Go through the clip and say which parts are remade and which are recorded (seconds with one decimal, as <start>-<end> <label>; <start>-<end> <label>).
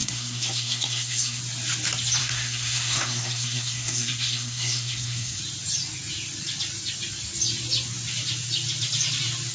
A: 0.0-1.4 remade; 1.4-2.2 recorded; 2.2-5.4 remade; 5.4-9.5 recorded